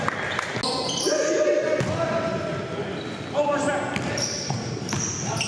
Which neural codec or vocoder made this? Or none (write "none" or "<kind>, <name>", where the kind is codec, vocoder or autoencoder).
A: none